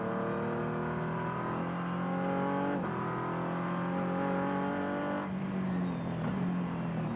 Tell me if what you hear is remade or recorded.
recorded